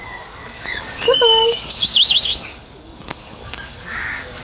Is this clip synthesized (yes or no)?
yes